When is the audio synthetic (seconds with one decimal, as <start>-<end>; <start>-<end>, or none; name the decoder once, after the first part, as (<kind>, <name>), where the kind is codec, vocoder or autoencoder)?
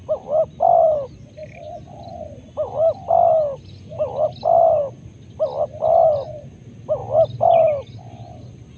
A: none